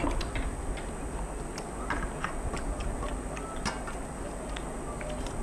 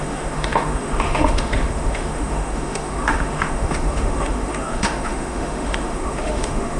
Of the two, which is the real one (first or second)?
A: first